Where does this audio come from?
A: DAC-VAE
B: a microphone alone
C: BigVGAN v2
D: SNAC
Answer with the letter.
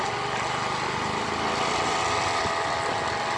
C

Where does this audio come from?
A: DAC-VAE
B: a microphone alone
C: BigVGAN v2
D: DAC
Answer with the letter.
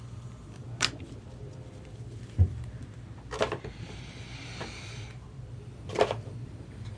C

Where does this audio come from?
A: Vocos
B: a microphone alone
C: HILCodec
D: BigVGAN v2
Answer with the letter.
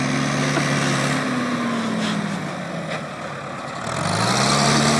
B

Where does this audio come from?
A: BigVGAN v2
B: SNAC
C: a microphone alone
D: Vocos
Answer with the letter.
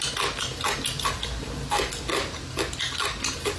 C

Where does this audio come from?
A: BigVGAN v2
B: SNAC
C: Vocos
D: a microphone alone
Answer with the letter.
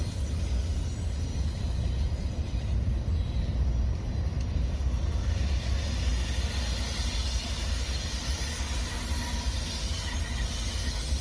D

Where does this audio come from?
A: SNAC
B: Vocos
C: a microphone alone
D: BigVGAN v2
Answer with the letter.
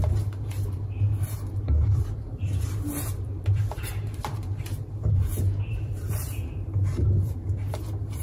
D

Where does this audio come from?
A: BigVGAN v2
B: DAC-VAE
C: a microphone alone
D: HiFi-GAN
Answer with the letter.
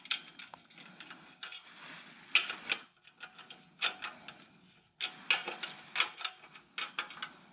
C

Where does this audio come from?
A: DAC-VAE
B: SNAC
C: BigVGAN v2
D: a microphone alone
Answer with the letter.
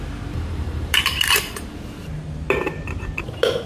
C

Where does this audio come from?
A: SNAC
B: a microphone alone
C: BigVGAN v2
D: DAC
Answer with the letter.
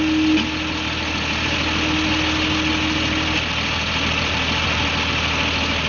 B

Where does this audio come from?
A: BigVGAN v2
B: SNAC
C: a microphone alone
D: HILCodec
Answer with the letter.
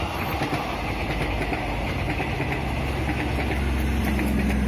C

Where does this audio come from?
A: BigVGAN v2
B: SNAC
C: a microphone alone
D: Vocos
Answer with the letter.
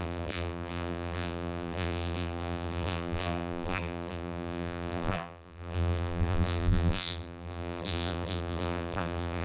A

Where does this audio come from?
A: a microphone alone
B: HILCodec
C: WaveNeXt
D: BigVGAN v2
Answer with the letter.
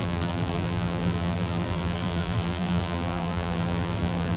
D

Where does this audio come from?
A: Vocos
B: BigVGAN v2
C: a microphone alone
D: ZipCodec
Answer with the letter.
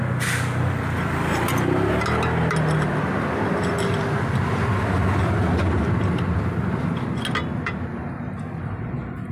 C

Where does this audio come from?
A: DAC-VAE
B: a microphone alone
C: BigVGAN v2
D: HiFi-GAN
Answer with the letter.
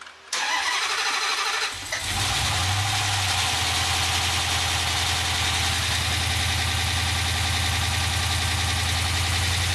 B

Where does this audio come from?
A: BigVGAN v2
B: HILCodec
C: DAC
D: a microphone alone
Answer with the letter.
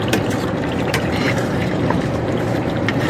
A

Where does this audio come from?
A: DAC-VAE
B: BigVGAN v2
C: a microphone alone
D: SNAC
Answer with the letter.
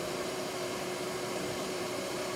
B